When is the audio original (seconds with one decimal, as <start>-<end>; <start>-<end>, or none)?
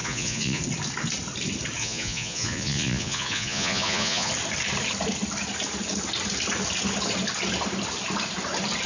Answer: 0.6-1.8; 4.3-8.9